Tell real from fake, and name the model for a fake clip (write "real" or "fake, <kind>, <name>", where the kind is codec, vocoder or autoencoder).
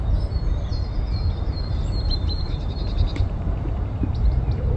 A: fake, vocoder, BigVGAN v2